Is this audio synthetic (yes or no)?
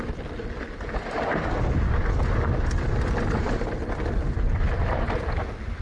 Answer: no